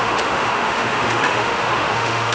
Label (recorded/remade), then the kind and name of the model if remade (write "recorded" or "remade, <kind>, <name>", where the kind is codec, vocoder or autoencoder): remade, autoencoder, DAC-VAE